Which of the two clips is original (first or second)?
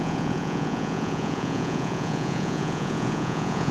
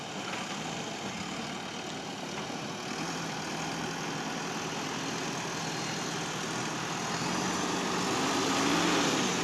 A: second